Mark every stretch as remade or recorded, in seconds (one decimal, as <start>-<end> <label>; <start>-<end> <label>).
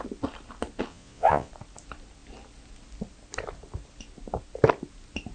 0.0-0.9 recorded; 0.9-1.5 remade; 1.5-5.3 recorded